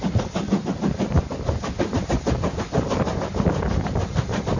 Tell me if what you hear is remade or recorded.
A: recorded